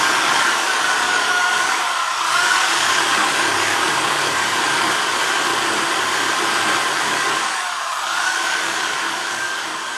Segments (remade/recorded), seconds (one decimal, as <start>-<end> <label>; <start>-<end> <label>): 0.0-5.5 remade; 5.5-7.0 recorded; 7.0-10.0 remade